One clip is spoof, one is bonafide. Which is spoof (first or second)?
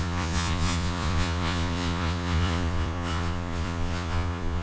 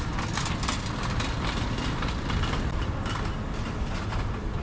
first